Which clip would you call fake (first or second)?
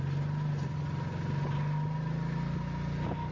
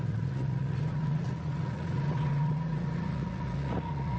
second